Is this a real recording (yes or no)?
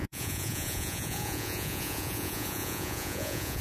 no